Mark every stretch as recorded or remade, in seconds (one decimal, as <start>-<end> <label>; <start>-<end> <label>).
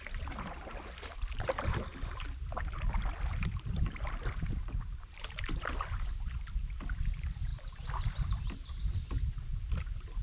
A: 0.0-10.2 remade